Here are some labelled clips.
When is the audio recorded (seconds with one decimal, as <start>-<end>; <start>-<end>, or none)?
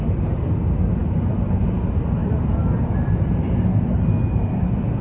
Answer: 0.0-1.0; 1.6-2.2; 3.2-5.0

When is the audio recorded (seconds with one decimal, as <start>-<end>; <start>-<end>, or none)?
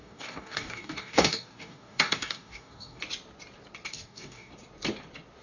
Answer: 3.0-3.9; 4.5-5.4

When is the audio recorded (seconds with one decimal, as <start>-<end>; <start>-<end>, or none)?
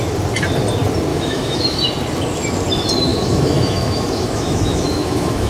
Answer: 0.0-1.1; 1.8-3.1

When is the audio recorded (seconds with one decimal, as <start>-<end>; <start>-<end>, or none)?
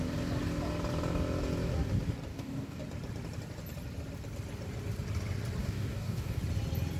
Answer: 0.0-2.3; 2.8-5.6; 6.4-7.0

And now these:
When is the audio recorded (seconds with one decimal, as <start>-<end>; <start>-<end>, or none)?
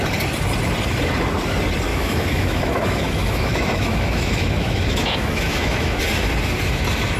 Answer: 0.0-1.9; 6.0-7.2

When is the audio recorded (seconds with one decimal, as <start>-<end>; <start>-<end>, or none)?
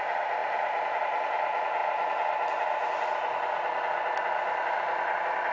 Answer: 0.0-0.4; 1.0-5.5